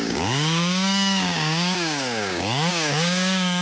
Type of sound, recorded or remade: remade